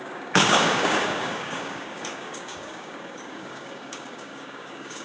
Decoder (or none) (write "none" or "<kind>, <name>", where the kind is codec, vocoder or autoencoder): codec, DAC